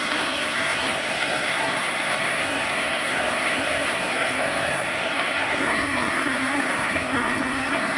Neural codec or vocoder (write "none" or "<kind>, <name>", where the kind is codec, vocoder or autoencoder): codec, SNAC